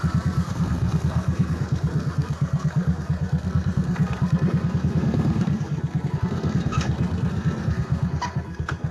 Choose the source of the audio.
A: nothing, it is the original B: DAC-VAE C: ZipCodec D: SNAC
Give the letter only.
D